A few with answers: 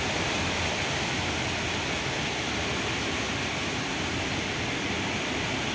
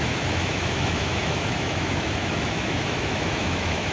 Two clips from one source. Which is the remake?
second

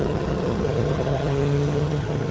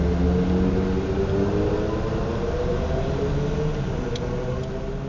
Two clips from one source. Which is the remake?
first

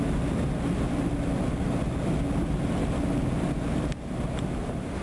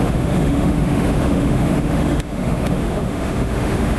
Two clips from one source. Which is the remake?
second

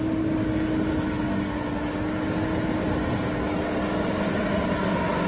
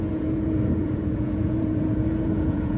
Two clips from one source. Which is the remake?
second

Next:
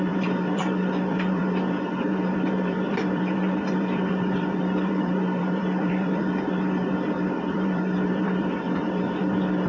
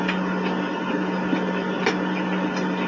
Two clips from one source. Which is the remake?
first